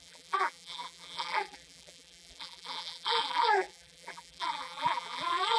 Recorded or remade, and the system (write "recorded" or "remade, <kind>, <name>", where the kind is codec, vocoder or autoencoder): remade, vocoder, BigVGAN v2